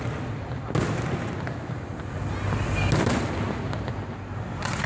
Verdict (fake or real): real